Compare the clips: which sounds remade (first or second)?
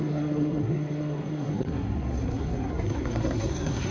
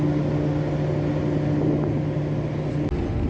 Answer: first